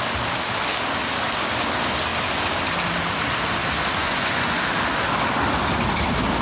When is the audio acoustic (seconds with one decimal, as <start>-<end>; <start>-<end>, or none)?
0.0-4.0; 4.6-6.4